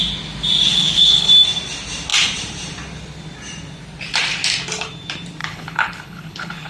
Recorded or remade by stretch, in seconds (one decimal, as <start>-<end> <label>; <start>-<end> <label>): 0.0-0.7 recorded; 0.7-1.3 remade; 1.3-5.4 recorded; 5.4-6.7 remade